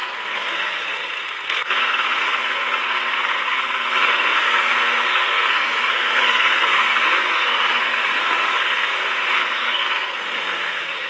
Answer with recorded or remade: remade